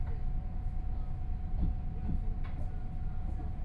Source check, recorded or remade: recorded